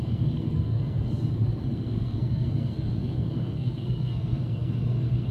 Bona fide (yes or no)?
no